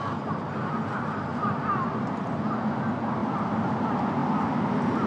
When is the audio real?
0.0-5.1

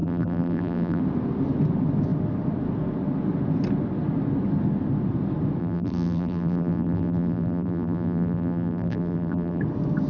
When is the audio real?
1.0-5.6; 9.6-10.1

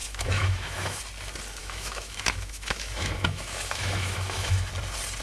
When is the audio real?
1.0-1.6; 4.7-5.2

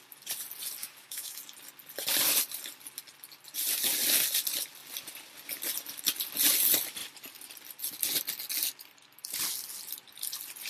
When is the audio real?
0.0-0.8; 1.4-10.7

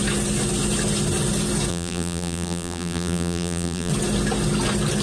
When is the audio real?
0.0-1.7; 3.9-5.0

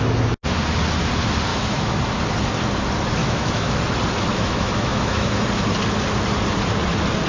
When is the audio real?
0.0-1.5; 2.0-3.2; 3.8-4.3; 5.4-7.3

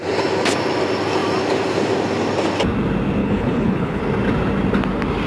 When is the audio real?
0.0-3.2; 4.0-5.3